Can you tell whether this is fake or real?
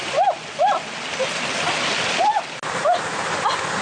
real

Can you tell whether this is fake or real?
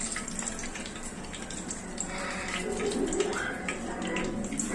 real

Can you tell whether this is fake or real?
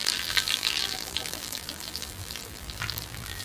fake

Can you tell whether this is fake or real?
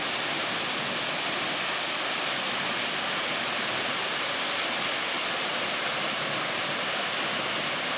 real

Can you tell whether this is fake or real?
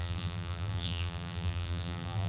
fake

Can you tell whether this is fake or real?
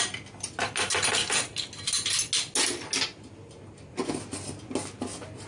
real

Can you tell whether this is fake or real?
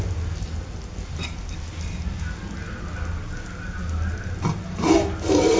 real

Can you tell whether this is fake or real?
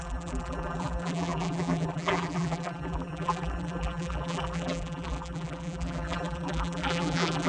fake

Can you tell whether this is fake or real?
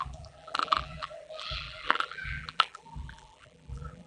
fake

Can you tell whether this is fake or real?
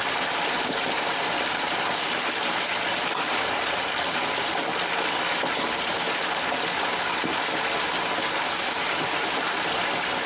real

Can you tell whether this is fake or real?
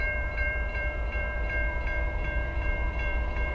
fake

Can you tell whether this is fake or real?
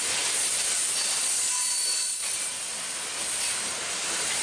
real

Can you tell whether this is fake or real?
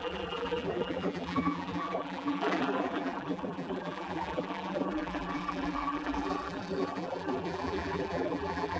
fake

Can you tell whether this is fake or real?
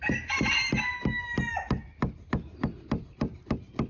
real